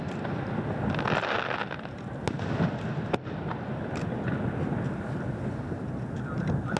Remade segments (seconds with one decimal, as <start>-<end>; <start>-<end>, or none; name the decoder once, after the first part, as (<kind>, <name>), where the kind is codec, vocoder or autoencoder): none